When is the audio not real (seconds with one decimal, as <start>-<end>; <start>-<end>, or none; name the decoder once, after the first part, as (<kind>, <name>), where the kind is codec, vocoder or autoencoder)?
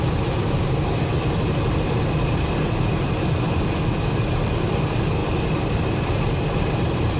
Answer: 0.0-7.2 (vocoder, BigVGAN v2)